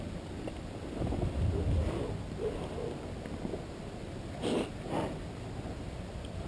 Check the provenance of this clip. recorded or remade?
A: recorded